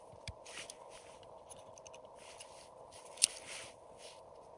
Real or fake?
real